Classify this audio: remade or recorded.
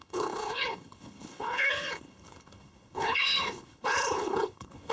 remade